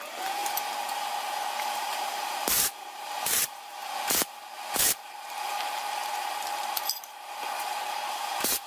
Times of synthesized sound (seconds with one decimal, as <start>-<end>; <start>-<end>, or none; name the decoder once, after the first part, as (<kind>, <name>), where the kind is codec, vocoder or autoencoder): 0.0-0.4 (vocoder, BigVGAN v2); 1.6-8.7